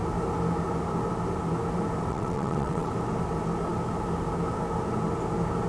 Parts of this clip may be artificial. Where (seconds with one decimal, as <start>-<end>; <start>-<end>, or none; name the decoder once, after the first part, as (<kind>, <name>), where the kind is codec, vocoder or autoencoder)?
2.1-2.9 (vocoder, WaveNeXt)

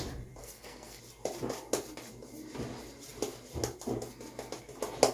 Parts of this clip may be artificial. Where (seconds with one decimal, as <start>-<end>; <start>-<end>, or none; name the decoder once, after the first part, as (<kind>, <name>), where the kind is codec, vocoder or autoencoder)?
0.4-1.0 (codec, SNAC)

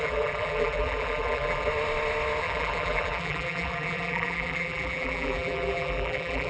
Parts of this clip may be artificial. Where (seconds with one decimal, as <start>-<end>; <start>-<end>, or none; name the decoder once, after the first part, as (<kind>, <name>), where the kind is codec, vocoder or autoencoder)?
0.0-1.7 (vocoder, BigVGAN v2); 2.4-6.5

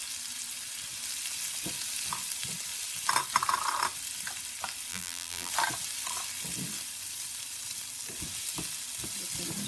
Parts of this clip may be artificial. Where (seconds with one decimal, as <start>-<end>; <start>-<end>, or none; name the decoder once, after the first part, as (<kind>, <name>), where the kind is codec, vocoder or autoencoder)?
4.9-5.5 (vocoder, BigVGAN v2)

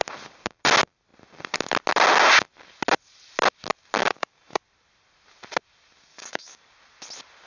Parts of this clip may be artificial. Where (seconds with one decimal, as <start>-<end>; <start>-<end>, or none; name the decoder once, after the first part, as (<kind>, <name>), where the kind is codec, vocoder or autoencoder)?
4.0-4.6 (codec, DAC); 6.1-6.7